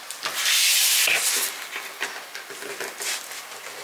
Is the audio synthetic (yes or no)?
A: no